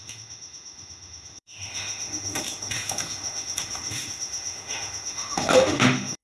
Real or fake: fake